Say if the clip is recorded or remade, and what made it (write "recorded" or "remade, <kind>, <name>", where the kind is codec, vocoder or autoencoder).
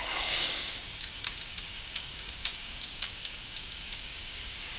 remade, codec, DAC